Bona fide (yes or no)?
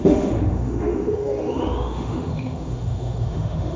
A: no